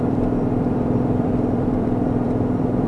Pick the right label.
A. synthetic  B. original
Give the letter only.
A